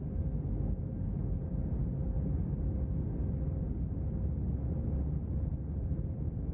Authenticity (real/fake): real